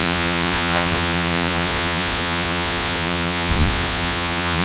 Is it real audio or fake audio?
fake